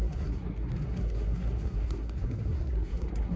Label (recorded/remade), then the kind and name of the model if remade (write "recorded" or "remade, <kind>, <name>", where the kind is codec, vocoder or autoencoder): remade, codec, SNAC